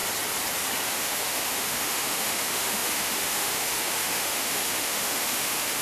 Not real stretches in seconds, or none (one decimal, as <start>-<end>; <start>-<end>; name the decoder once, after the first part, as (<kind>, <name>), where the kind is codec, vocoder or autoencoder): 0.9-5.8 (autoencoder, DAC-VAE)